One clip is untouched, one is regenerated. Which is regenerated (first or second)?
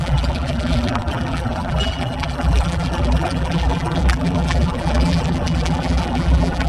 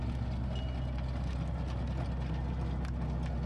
first